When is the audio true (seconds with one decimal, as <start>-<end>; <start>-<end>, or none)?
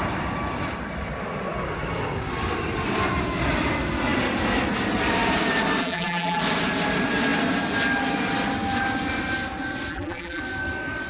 0.0-5.8; 6.4-9.9; 10.4-11.1